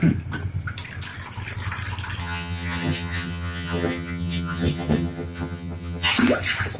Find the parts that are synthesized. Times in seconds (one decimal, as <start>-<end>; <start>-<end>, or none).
2.2-6.1